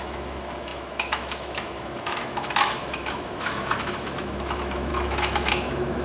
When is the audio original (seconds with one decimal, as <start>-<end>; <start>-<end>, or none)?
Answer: none